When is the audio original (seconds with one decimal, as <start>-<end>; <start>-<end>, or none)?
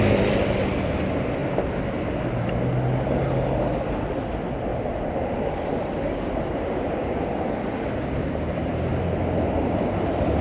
1.4-4.0; 4.7-6.1; 8.9-9.4